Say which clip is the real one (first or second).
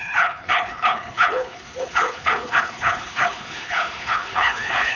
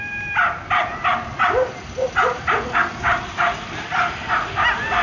second